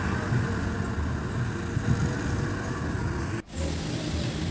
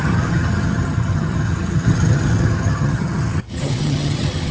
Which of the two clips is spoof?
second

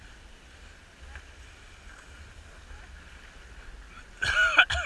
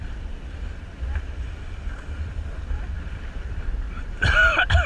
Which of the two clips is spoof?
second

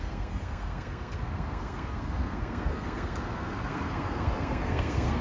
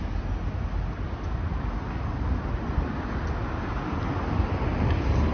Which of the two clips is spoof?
first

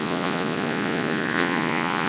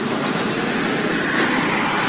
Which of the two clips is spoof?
first